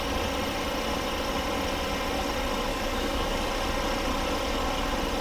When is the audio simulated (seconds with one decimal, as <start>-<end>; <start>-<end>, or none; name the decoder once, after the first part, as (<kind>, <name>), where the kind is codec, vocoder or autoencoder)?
2.7-3.5 (codec, DAC)